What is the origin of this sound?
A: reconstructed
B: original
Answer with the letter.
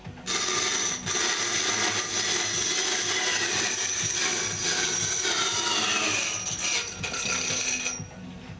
B